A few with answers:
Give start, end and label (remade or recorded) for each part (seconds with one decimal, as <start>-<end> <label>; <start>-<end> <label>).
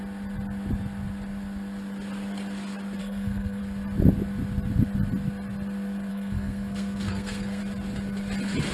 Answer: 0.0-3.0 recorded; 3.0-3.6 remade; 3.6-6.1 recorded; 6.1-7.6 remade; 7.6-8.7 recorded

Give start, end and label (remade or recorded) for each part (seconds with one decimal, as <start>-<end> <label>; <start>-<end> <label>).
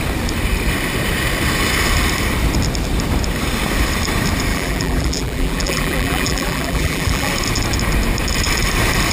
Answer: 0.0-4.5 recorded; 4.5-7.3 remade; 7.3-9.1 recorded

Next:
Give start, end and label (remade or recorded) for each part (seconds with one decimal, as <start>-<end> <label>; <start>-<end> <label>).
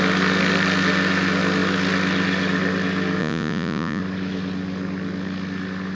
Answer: 0.0-3.2 recorded; 3.2-4.0 remade; 4.0-5.9 recorded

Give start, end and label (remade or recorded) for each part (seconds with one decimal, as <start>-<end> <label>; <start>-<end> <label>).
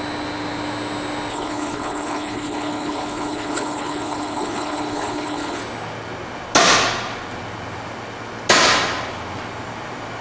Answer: 0.0-1.3 recorded; 1.3-5.6 remade; 5.6-10.2 recorded